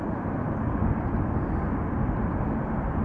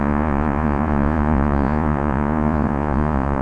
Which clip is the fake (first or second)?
second